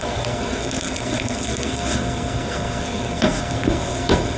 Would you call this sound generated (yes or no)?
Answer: yes